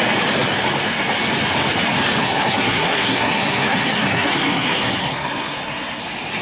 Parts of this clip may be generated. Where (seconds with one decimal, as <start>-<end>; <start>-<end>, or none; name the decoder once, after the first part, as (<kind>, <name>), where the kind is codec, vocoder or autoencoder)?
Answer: 2.2-6.0 (codec, SNAC)